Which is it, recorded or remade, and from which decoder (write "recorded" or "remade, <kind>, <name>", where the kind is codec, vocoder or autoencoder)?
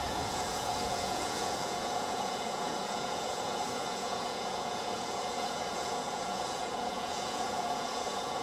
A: remade, vocoder, Vocos